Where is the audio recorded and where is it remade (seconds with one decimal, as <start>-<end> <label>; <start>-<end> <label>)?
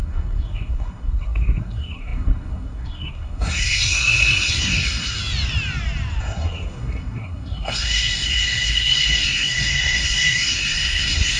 0.0-5.2 remade; 5.2-6.2 recorded; 6.2-11.4 remade